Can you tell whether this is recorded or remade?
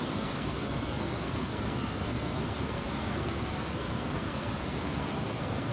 remade